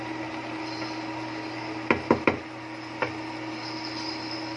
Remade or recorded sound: recorded